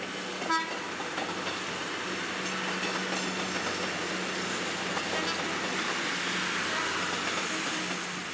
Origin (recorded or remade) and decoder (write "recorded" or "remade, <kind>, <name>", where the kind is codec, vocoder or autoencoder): recorded